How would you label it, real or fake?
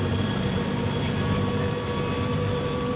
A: fake